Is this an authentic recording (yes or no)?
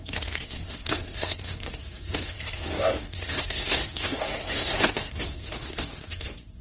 no